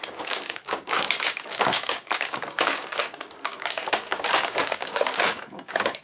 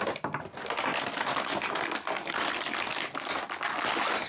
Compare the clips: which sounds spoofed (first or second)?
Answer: first